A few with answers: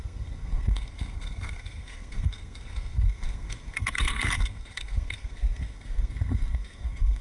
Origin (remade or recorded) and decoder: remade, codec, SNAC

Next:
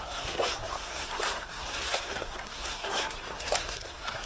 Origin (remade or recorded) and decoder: remade, codec, SNAC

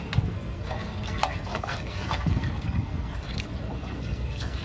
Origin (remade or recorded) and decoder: remade, codec, SNAC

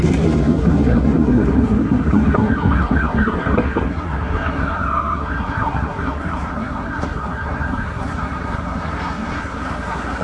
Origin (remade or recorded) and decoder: remade, codec, SNAC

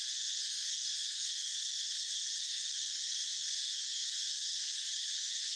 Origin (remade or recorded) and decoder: remade, codec, SNAC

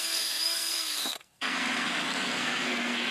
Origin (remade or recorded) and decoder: remade, codec, SNAC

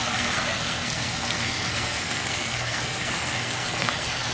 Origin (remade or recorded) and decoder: remade, codec, SNAC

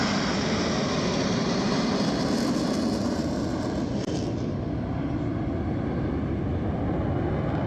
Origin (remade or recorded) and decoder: recorded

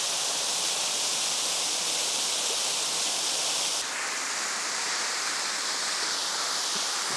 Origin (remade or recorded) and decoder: recorded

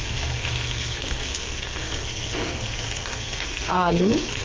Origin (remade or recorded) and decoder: remade, codec, SNAC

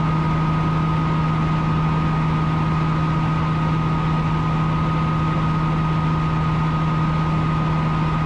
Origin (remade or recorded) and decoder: recorded